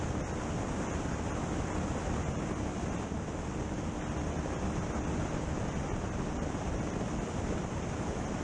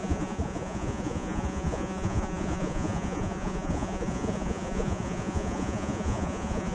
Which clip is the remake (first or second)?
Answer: second